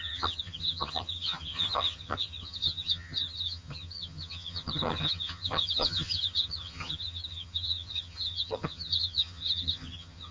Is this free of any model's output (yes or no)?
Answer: no